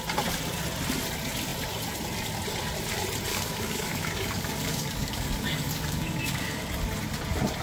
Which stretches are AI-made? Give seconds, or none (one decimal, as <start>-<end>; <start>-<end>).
3.3-6.7